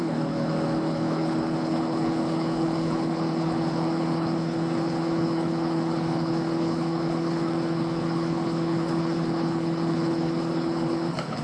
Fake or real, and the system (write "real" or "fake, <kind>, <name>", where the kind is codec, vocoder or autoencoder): fake, codec, HILCodec